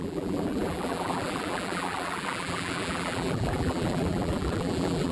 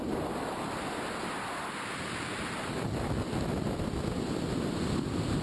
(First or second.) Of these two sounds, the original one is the second